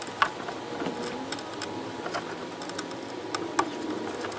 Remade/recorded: recorded